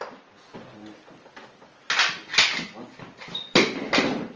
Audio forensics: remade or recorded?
recorded